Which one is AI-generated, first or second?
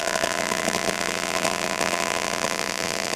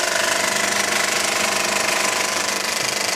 first